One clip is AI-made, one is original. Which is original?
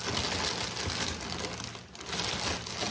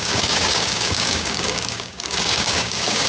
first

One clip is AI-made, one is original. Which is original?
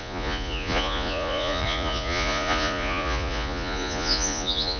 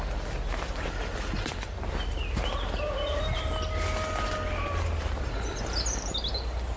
second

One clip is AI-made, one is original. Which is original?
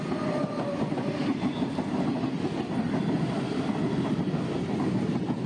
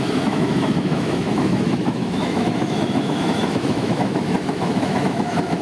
first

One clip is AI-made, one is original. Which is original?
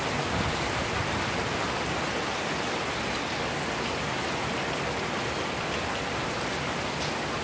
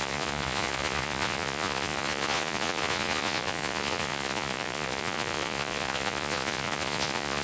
first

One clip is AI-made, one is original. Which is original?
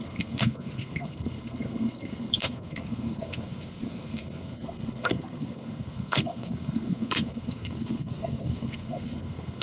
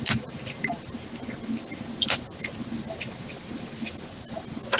second